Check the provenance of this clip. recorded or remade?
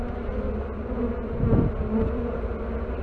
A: recorded